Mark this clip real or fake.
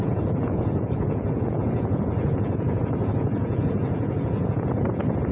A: fake